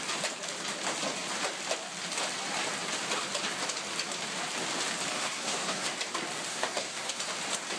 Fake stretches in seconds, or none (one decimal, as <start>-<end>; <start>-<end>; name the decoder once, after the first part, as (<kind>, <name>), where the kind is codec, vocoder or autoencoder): 5.1-5.9 (codec, SNAC); 6.5-7.2